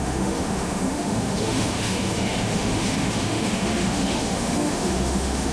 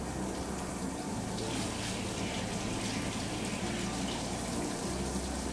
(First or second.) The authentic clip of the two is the second